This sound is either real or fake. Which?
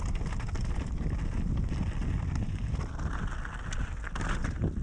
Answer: real